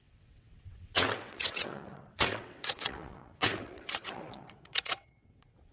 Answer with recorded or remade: remade